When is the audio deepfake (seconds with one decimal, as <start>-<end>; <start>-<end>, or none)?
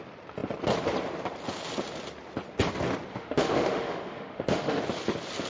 3.1-4.8